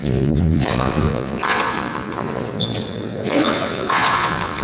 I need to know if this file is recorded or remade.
remade